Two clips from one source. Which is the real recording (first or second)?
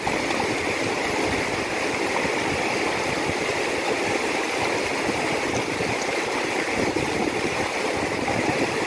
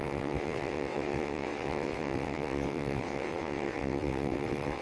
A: first